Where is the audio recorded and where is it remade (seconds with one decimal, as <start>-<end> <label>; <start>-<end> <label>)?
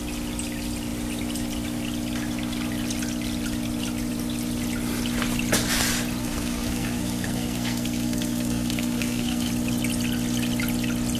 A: 0.0-6.2 recorded; 6.2-9.5 remade; 9.5-11.2 recorded